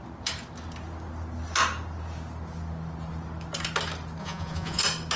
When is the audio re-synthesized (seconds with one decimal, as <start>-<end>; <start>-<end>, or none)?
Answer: 4.2-4.8